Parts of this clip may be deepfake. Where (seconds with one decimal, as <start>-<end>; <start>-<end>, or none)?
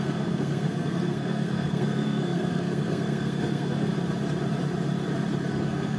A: 0.0-3.9; 5.5-6.0